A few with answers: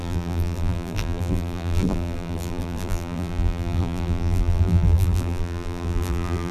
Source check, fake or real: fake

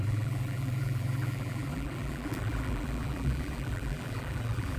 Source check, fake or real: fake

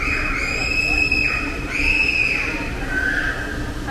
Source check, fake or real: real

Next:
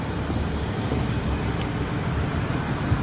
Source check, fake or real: real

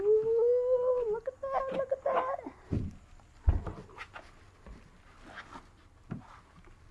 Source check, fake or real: real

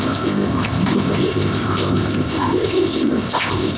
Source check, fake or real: fake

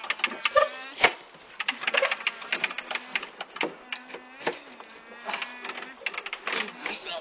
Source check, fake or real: real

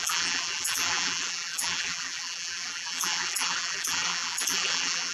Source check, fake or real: fake